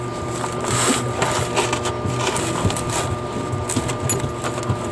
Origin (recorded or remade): recorded